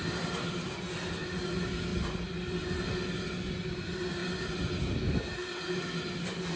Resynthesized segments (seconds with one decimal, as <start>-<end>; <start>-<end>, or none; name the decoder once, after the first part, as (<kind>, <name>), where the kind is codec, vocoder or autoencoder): none